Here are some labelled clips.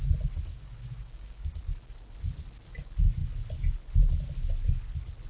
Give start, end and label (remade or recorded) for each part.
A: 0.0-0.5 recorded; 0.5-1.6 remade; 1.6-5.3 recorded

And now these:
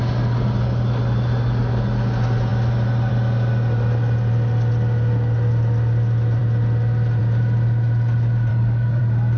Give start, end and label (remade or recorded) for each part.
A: 0.0-8.5 recorded; 8.5-9.0 remade; 9.0-9.4 recorded

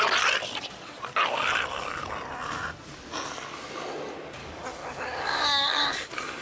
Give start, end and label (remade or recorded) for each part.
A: 0.0-4.4 recorded; 4.4-6.4 remade

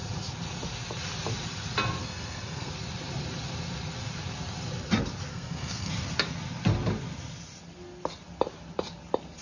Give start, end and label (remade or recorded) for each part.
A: 0.0-2.0 recorded; 2.0-2.7 remade; 2.7-5.3 recorded; 5.3-5.9 remade; 5.9-9.4 recorded

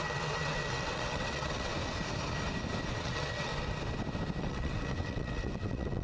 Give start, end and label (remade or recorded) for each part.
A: 0.0-1.7 remade; 1.7-2.9 recorded; 2.9-3.5 remade; 3.5-4.4 recorded; 4.4-6.0 remade

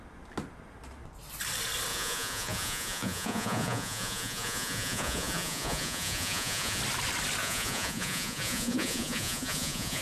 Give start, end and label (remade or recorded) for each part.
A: 0.0-1.9 recorded; 1.9-6.8 remade; 6.8-7.4 recorded; 7.4-10.0 remade

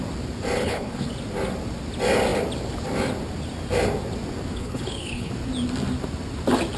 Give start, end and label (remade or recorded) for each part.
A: 0.0-0.6 recorded; 0.6-1.1 remade; 1.1-4.5 recorded; 4.5-5.3 remade; 5.3-6.8 recorded

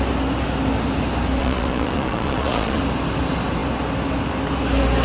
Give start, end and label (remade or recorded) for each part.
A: 0.0-1.4 recorded; 1.4-2.8 remade; 2.8-5.0 recorded